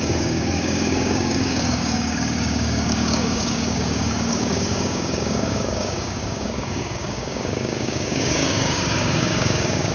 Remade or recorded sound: remade